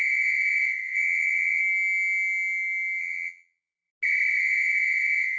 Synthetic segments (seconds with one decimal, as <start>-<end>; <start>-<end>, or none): 0.0-1.6; 3.0-3.9; 4.4-5.4